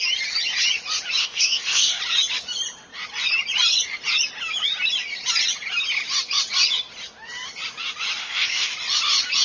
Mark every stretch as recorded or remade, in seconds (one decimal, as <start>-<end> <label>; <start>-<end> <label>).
0.0-1.2 recorded; 1.2-2.0 remade; 2.0-8.2 recorded; 8.2-8.7 remade; 8.7-9.4 recorded